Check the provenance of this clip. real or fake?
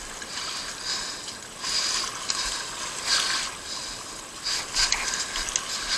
real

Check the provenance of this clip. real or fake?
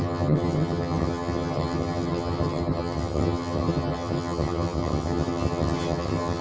fake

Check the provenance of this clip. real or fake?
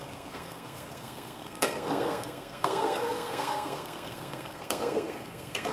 fake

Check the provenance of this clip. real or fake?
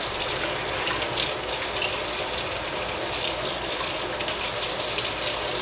real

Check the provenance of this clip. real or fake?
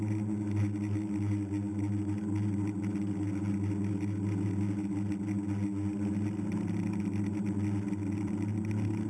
real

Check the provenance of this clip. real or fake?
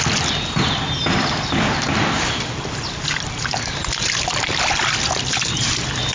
real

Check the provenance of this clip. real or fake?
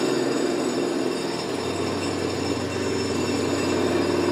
real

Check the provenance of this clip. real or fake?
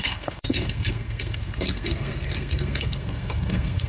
fake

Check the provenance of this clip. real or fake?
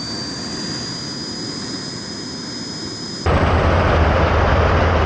real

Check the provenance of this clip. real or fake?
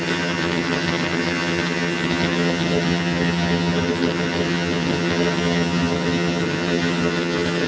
fake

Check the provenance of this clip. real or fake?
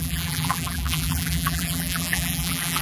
fake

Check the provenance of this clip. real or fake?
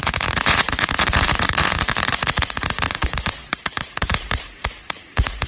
fake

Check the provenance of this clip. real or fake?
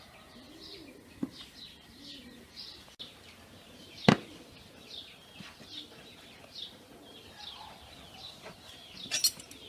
real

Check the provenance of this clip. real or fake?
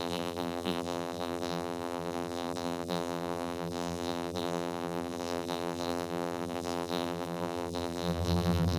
fake